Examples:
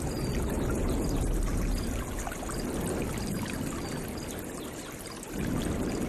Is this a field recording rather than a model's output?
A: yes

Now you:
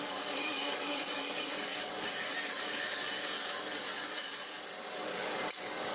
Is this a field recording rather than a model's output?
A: no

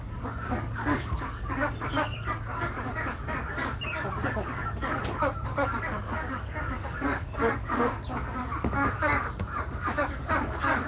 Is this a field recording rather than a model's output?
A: no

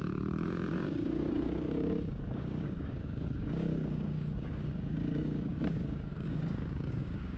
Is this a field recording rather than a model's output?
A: no